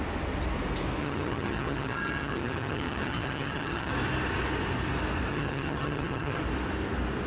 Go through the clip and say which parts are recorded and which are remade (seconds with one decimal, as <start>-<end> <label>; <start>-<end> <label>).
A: 0.0-1.0 recorded; 1.0-3.9 remade; 3.9-5.3 recorded; 5.3-6.4 remade; 6.4-7.3 recorded